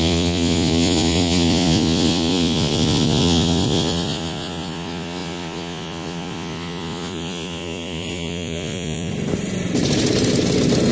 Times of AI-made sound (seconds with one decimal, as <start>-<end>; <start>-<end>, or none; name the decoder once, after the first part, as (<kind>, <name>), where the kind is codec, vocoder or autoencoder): 0.0-9.1 (vocoder, Vocos)